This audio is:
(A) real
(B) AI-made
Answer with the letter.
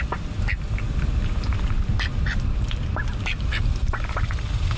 A